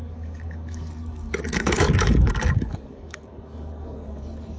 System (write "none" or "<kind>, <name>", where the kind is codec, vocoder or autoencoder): codec, DAC